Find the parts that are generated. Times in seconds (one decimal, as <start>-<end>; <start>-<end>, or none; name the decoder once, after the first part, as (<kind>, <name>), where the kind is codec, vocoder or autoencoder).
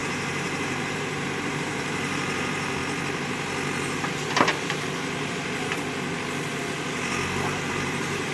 0.0-2.8 (vocoder, BigVGAN v2); 7.7-8.3